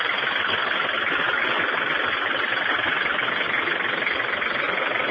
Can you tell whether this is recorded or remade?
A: recorded